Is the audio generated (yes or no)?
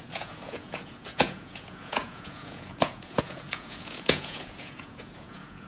yes